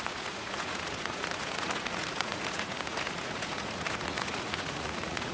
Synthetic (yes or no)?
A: yes